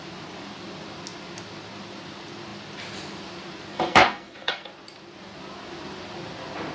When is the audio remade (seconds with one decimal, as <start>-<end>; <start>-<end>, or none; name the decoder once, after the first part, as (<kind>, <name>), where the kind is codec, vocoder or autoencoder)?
3.7-4.7 (codec, SNAC)